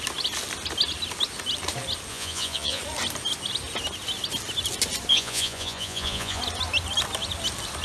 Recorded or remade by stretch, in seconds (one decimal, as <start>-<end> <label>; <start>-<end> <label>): 0.0-2.1 recorded; 2.1-2.8 remade; 2.8-5.1 recorded; 5.1-6.4 remade; 6.4-7.8 recorded

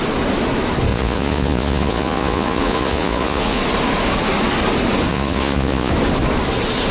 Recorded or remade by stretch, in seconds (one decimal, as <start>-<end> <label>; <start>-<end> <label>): 0.0-0.9 recorded; 0.9-3.6 remade; 3.6-5.1 recorded; 5.1-5.9 remade; 5.9-6.9 recorded

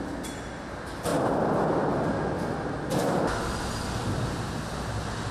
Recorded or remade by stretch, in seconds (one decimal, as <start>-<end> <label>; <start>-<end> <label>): 0.0-5.3 recorded

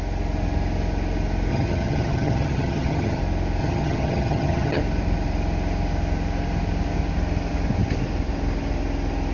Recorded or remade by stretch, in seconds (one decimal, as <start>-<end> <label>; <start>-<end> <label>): 0.0-1.5 recorded; 1.5-3.2 remade; 3.2-3.6 recorded; 3.6-4.8 remade; 4.8-9.3 recorded